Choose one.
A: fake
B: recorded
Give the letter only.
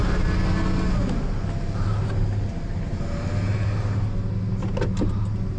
B